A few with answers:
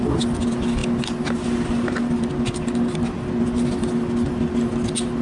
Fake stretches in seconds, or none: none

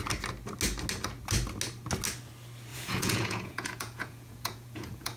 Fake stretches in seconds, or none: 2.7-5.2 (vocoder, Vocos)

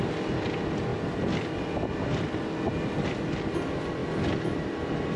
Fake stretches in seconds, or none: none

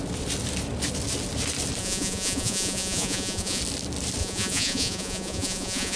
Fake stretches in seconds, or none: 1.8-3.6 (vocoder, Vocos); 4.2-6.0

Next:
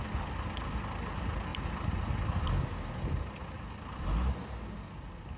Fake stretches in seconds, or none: none

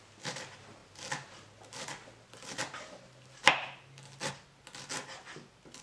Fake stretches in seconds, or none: none